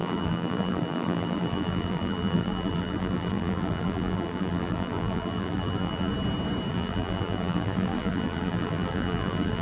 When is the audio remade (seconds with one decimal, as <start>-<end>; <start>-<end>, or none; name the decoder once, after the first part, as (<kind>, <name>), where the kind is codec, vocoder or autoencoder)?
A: 0.0-6.1 (vocoder, BigVGAN v2); 6.7-9.6